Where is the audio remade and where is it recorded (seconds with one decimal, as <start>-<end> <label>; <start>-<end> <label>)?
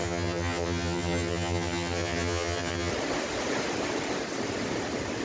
0.0-2.9 remade; 2.9-5.2 recorded